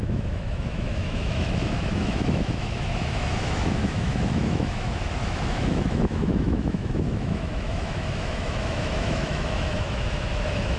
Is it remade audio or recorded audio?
remade